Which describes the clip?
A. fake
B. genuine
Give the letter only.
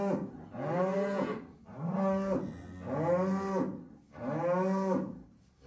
B